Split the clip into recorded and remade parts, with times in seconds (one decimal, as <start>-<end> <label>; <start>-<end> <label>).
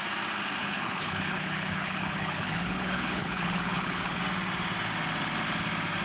0.0-0.6 recorded; 0.6-4.2 remade; 4.2-6.0 recorded